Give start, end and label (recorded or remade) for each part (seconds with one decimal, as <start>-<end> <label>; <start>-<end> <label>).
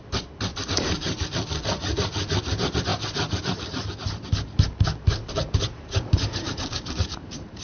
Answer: 0.0-0.5 recorded; 0.5-2.4 remade; 2.4-5.2 recorded; 5.2-7.6 remade